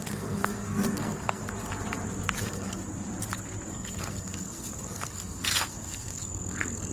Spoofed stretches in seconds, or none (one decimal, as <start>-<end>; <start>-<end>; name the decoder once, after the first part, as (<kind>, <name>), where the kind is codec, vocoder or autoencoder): 0.0-1.4 (codec, SNAC); 2.4-2.8; 3.7-6.9